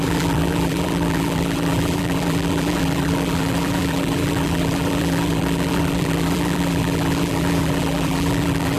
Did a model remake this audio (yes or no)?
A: yes